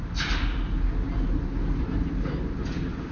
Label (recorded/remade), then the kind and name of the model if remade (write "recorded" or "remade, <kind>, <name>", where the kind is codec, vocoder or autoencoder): recorded